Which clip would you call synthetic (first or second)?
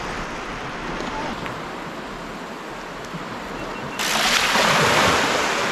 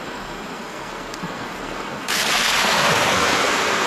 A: second